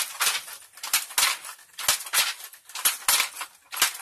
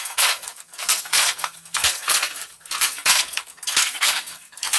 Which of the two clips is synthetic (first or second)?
second